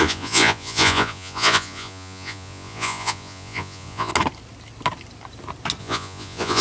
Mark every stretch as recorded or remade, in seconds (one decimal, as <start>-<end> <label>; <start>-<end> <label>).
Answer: 0.0-4.1 remade; 4.1-5.8 recorded; 5.8-6.6 remade